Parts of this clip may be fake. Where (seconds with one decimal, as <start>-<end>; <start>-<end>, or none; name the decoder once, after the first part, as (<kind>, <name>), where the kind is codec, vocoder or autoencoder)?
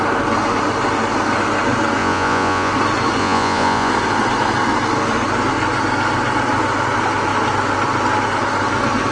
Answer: 2.0-2.7 (vocoder, Vocos); 3.2-3.9